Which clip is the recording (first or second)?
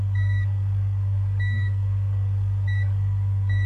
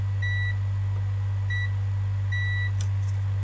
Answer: second